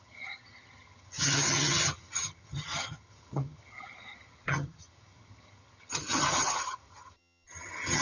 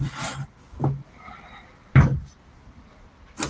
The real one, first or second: second